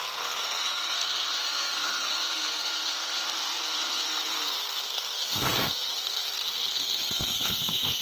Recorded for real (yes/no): no